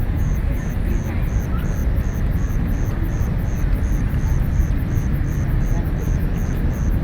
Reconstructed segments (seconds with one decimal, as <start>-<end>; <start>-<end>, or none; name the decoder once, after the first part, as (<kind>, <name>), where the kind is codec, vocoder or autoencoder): 0.0-0.8 (vocoder, Vocos)